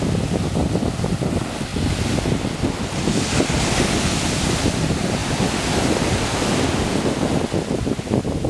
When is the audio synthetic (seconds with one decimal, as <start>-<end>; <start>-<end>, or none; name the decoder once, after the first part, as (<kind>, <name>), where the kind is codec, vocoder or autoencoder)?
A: none